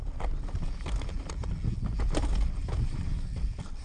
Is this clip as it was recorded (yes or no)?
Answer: yes